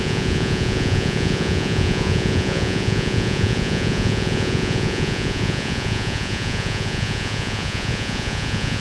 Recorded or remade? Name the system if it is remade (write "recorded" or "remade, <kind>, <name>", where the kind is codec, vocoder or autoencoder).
remade, vocoder, Vocos